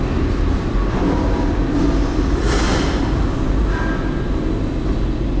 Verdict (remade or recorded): recorded